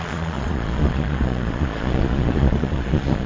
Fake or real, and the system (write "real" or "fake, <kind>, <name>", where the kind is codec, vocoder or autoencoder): fake, vocoder, Vocos